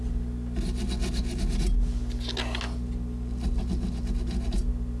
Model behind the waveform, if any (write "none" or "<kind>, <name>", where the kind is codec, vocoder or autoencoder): none